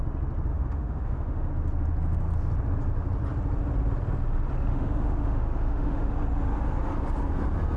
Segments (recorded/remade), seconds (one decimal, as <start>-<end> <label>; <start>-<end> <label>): 0.0-0.5 recorded; 0.5-1.5 remade; 1.5-4.7 recorded; 4.7-6.1 remade; 6.1-7.8 recorded